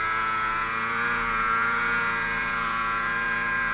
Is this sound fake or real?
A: fake